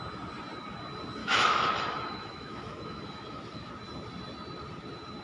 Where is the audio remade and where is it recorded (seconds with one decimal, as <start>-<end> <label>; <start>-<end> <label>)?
0.0-1.2 recorded; 1.2-3.7 remade; 3.7-5.2 recorded